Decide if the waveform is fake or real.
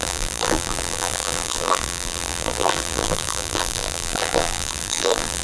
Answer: fake